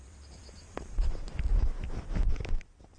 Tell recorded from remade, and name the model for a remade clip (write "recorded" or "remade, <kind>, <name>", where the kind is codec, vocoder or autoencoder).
recorded